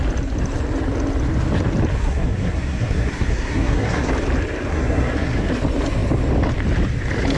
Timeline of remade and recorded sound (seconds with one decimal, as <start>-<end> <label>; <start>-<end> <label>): 0.0-2.0 recorded; 2.0-4.1 remade; 4.1-4.7 recorded; 4.7-5.5 remade; 5.5-7.4 recorded

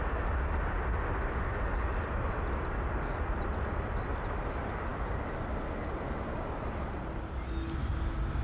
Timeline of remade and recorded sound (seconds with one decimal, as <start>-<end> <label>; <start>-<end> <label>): 0.0-8.4 recorded

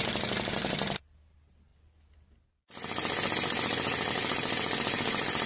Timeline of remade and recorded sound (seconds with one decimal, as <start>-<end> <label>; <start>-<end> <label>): 0.0-5.5 recorded

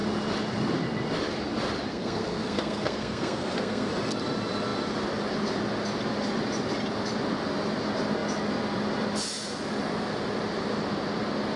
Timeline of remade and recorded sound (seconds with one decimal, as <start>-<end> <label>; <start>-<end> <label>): 0.0-1.9 recorded; 1.9-3.9 remade; 3.9-11.6 recorded

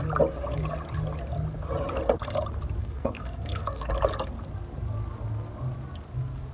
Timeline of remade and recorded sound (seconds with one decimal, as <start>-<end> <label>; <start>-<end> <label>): 0.0-2.8 recorded; 2.8-3.9 remade; 3.9-6.5 recorded

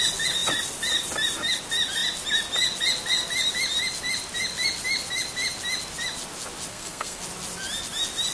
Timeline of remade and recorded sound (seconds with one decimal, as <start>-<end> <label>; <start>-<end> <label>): 0.0-6.7 recorded; 6.7-7.2 remade; 7.2-8.3 recorded

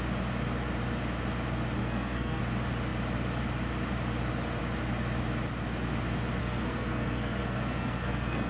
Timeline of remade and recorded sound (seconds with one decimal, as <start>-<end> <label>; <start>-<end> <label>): 0.0-1.8 recorded; 1.8-2.4 remade; 2.4-6.4 recorded; 6.4-8.5 remade